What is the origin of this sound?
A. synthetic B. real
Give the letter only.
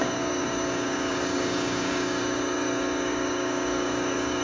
A